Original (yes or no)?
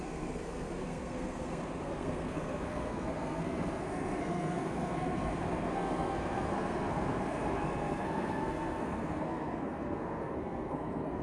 no